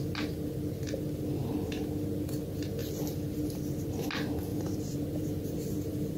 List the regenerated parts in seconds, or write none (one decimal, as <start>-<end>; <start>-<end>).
4.5-5.4